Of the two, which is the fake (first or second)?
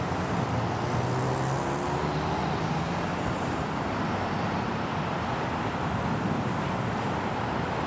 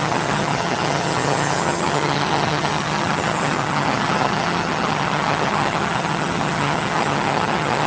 second